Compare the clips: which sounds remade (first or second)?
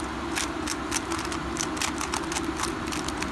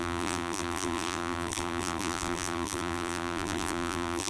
second